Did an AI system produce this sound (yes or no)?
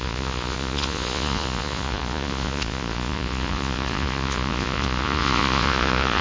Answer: yes